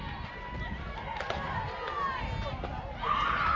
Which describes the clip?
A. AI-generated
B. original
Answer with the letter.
B